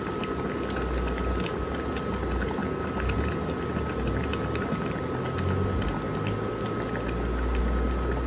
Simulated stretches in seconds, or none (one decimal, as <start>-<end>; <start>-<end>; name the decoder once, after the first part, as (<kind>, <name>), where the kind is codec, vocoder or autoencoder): none